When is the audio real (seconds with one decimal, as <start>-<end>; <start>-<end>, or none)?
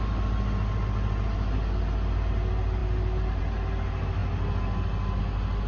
0.0-5.7